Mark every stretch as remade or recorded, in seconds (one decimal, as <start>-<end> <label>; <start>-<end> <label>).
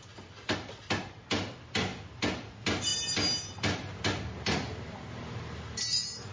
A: 0.0-6.3 recorded